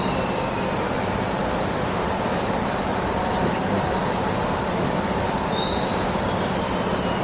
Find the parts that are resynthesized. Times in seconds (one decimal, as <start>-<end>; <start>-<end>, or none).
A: 1.4-5.5; 5.9-6.5